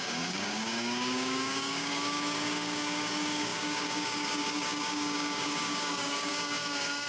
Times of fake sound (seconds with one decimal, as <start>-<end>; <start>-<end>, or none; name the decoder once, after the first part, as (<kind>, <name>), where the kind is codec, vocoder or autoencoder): 0.0-7.1 (codec, DAC)